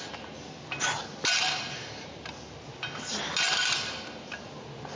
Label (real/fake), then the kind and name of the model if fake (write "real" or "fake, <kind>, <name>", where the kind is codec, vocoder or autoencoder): real